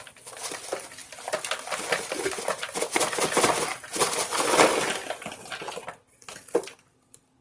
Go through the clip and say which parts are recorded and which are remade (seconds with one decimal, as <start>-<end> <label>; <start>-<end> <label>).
0.0-7.4 recorded